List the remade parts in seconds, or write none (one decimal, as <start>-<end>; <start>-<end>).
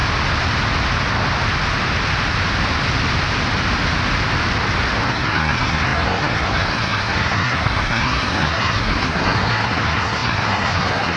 5.1-11.2